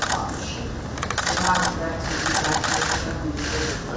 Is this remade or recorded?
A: recorded